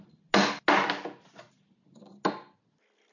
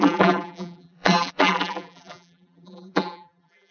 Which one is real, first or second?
first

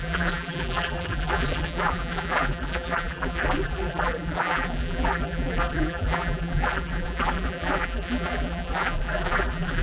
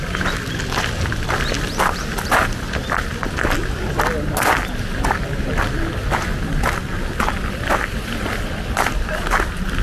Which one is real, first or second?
second